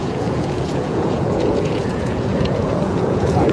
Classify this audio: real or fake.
fake